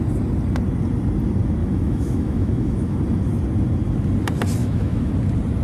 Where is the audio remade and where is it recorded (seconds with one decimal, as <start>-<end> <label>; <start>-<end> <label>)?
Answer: 0.0-1.6 recorded; 1.6-3.0 remade; 3.0-4.6 recorded; 4.6-5.1 remade; 5.1-5.6 recorded